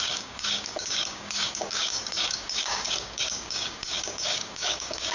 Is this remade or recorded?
remade